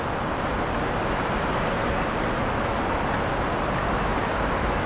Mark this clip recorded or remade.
recorded